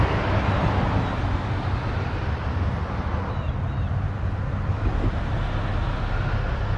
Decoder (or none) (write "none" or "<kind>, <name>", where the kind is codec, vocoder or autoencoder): none